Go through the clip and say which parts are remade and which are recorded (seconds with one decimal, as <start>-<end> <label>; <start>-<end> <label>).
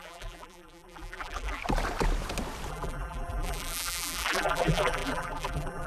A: 0.0-1.6 remade; 1.6-2.7 recorded; 2.7-5.9 remade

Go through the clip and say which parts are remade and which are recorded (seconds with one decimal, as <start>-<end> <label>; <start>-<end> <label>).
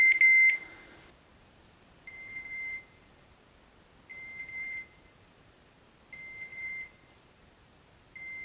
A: 0.0-1.3 recorded; 1.3-3.3 remade; 3.3-4.1 recorded; 4.1-5.9 remade; 5.9-6.5 recorded; 6.5-7.9 remade; 7.9-8.4 recorded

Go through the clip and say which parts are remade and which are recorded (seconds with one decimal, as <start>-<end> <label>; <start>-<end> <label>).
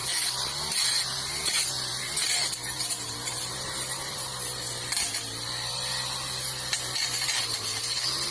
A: 0.0-0.7 recorded; 0.7-4.3 remade; 4.3-7.4 recorded; 7.4-8.3 remade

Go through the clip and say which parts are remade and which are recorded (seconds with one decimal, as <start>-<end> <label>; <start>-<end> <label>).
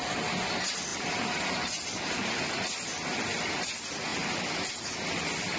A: 0.0-0.9 recorded; 0.9-3.5 remade; 3.5-4.1 recorded; 4.1-4.7 remade; 4.7-5.6 recorded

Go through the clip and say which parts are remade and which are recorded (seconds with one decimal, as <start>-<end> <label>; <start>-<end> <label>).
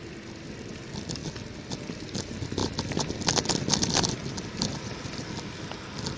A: 0.0-2.6 recorded; 2.6-5.3 remade; 5.3-6.2 recorded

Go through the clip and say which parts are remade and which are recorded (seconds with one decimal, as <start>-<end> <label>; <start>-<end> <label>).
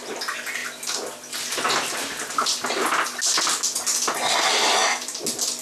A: 0.0-5.6 recorded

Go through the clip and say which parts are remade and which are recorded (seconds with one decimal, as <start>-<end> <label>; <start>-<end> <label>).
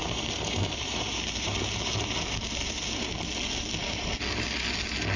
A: 0.0-3.1 remade; 3.1-5.2 recorded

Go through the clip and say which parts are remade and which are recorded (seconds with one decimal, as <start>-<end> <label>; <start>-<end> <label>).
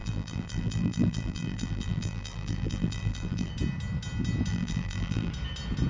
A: 0.0-3.5 remade; 3.5-4.5 recorded; 4.5-5.3 remade; 5.3-5.9 recorded